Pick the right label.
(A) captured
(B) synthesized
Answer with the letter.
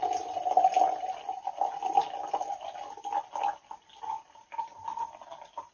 A